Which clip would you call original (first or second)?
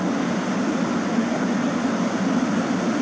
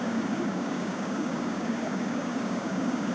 first